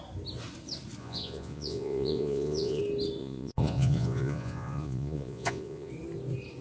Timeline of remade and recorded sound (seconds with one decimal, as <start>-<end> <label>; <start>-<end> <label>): 0.0-1.0 recorded; 1.0-2.8 remade; 2.8-3.2 recorded; 3.2-5.9 remade; 5.9-6.6 recorded